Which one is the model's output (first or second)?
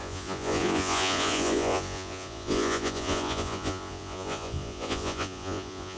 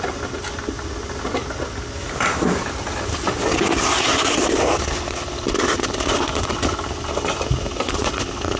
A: first